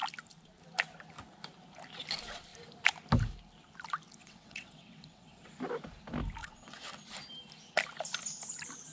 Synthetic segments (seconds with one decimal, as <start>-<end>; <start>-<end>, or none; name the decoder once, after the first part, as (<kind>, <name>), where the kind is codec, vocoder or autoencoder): 4.2-5.5 (vocoder, WaveNeXt); 6.4-7.0